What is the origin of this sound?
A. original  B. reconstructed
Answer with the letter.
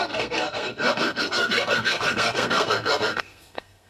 B